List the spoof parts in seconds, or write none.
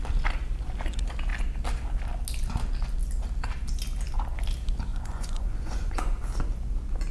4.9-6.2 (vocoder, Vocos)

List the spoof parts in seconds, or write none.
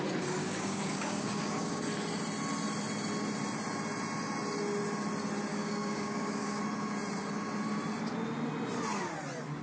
0.4-1.8 (codec, DAC); 5.5-6.6